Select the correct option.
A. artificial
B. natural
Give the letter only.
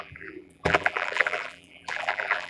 A